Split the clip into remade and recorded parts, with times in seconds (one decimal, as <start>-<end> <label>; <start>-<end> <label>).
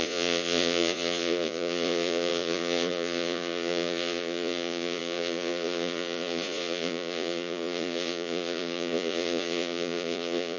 0.0-10.6 remade